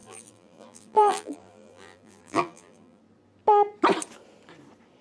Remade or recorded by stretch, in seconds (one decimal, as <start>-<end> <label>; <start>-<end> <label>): 0.0-3.0 remade; 3.0-5.0 recorded